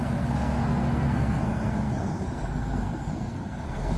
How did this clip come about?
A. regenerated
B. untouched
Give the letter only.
A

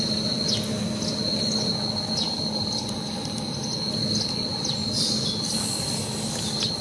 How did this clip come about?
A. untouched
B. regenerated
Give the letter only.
A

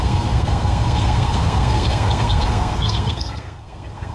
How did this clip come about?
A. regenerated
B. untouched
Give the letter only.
A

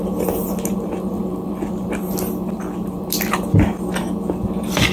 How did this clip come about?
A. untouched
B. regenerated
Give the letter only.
A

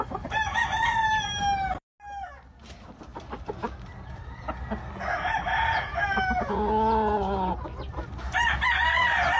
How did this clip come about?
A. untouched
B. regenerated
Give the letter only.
A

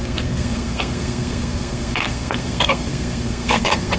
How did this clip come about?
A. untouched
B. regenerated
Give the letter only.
B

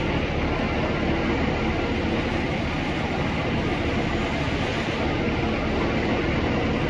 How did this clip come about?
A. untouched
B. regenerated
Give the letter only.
A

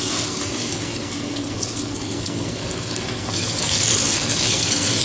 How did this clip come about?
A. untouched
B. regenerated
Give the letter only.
B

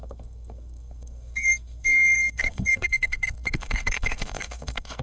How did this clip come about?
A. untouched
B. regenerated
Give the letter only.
B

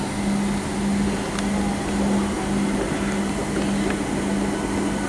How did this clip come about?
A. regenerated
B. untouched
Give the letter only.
B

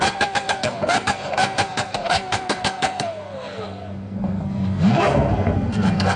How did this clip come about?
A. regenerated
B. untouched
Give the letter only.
A